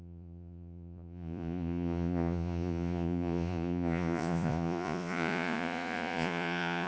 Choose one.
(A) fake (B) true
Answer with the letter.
A